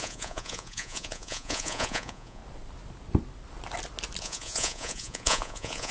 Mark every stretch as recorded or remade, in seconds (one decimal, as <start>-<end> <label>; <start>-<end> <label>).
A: 0.0-2.4 remade; 2.4-4.2 recorded; 4.2-5.9 remade